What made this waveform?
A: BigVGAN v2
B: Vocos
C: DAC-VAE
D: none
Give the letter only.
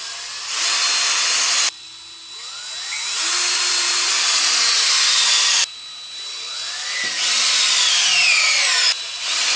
D